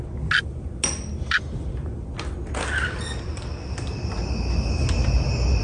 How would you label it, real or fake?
real